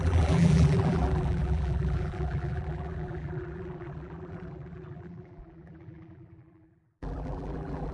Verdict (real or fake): fake